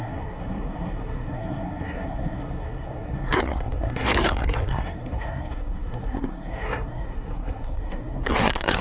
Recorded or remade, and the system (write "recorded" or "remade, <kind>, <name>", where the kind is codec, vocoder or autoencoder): remade, codec, SNAC